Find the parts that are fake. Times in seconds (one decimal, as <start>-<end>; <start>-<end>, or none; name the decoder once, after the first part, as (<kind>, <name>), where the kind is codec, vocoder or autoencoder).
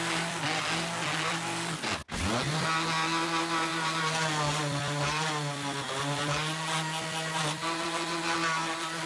none